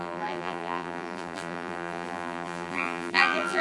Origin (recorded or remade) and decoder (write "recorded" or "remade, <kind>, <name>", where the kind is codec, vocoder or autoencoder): remade, vocoder, BigVGAN v2